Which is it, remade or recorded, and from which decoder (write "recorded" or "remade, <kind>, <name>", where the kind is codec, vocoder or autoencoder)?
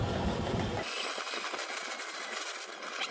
recorded